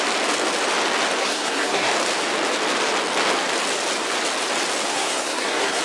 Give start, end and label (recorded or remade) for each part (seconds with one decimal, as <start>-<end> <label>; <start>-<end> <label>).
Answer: 0.0-1.2 recorded; 1.2-1.9 remade; 1.9-4.9 recorded; 4.9-5.8 remade